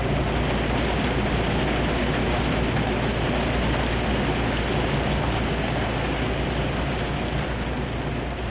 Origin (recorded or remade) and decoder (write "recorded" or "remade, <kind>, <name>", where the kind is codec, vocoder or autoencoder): recorded